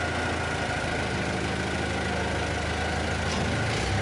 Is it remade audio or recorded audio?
recorded